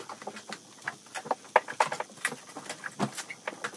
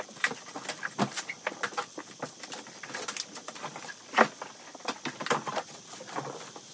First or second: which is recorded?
first